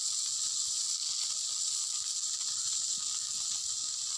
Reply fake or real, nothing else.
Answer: real